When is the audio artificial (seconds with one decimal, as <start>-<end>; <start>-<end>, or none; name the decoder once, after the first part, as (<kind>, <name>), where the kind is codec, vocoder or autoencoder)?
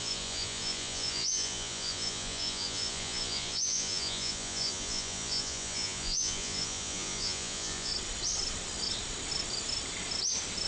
0.0-7.9 (vocoder, Vocos)